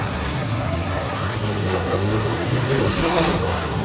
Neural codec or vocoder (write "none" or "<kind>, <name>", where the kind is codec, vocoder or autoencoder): codec, SNAC